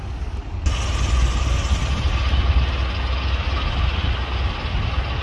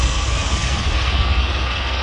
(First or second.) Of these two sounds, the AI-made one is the second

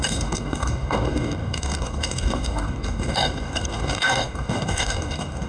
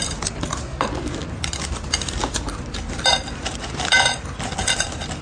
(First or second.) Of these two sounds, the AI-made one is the first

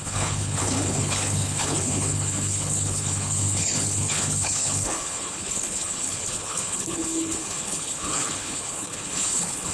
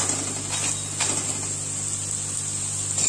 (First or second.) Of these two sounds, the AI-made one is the first